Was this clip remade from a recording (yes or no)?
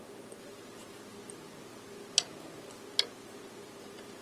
no